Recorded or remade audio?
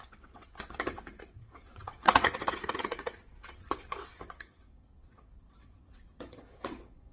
remade